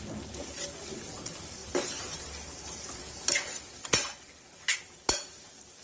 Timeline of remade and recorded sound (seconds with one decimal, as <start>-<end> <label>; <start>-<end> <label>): 0.0-5.8 recorded